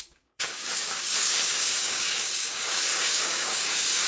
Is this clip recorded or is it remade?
remade